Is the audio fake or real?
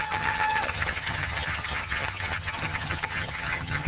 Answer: fake